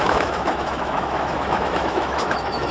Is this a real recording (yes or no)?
no